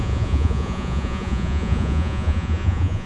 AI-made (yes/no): yes